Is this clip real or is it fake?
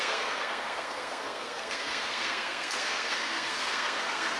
fake